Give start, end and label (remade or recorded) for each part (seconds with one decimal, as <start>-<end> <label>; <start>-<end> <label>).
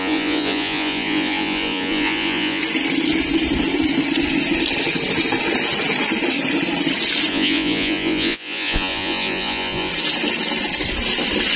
0.0-2.6 remade; 2.6-7.3 recorded; 7.3-9.9 remade; 9.9-11.6 recorded